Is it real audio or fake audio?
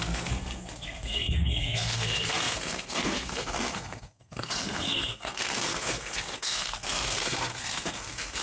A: fake